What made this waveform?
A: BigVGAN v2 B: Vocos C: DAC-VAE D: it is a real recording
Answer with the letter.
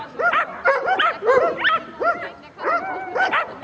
D